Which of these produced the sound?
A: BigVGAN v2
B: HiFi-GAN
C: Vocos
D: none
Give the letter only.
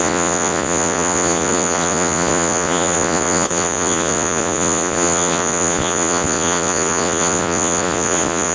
C